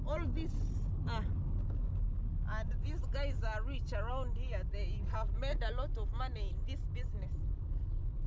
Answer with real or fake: real